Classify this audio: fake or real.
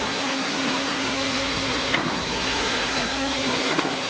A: fake